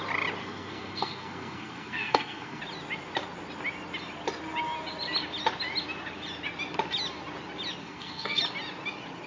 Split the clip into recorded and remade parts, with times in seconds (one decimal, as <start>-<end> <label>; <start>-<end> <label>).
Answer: 0.0-0.4 recorded; 0.4-2.6 remade; 2.6-7.8 recorded; 7.8-8.4 remade; 8.4-9.3 recorded